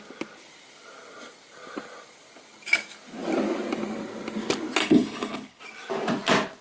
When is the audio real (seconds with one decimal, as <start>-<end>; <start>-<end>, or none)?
0.0-4.8; 5.6-6.6

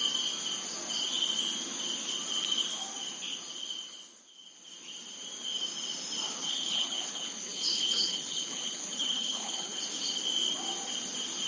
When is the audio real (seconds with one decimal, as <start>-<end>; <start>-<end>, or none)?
0.0-6.4; 9.8-11.5

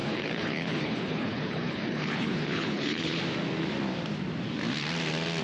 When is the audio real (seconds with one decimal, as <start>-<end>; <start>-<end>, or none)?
3.2-5.4

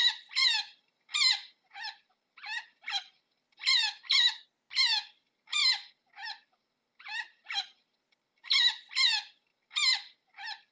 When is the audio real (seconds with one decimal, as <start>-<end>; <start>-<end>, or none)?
0.0-10.7

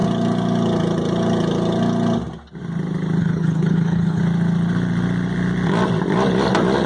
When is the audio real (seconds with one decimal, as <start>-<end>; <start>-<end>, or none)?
0.0-3.2; 4.2-6.9

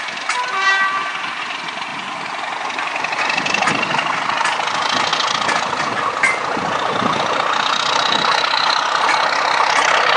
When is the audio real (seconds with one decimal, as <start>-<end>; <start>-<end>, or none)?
0.0-10.2

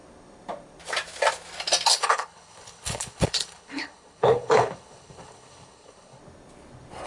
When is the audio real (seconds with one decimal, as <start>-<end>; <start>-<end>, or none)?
0.0-1.9; 6.2-7.1